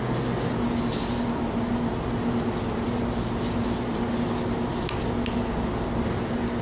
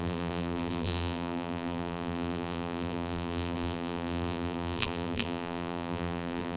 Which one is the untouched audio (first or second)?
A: first